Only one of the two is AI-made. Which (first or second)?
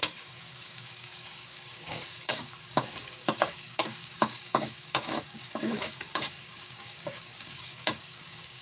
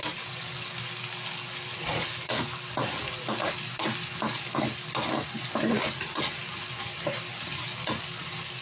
first